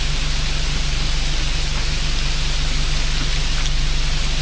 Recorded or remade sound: recorded